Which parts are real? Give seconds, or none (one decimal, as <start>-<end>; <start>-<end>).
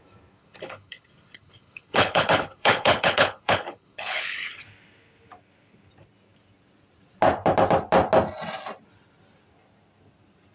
0.0-0.4; 4.6-10.5